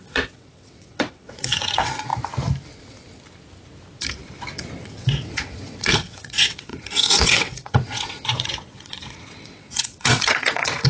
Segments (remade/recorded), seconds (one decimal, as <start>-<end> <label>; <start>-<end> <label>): 0.0-2.1 remade; 2.1-4.8 recorded; 4.8-10.9 remade